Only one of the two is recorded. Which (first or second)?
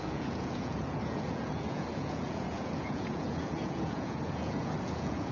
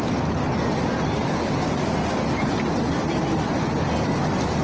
second